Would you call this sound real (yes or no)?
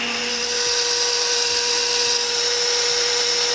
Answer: yes